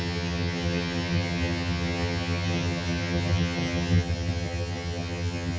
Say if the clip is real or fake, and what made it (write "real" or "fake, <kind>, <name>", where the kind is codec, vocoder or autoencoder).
fake, vocoder, HiFi-GAN